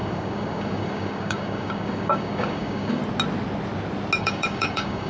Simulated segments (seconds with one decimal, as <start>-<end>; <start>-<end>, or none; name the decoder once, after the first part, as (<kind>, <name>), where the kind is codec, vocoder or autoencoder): 0.0-3.0 (codec, DAC); 4.2-5.1